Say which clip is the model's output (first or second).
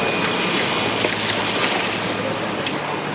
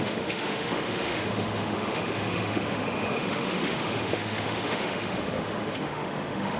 second